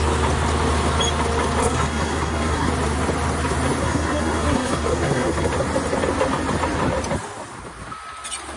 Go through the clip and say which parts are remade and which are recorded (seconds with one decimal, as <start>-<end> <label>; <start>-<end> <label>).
0.0-1.6 recorded; 1.6-2.7 remade; 2.7-3.8 recorded; 3.8-5.5 remade; 5.5-8.6 recorded